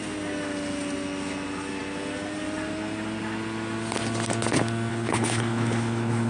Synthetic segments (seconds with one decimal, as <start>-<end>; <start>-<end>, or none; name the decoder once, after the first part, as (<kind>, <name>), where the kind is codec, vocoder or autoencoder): 4.9-6.3 (codec, HILCodec)